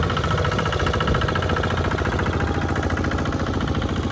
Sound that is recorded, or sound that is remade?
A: recorded